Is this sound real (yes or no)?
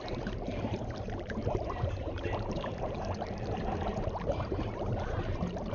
no